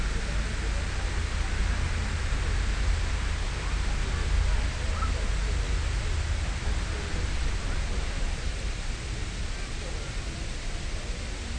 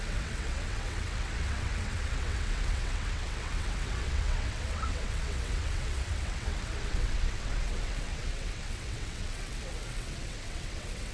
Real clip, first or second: first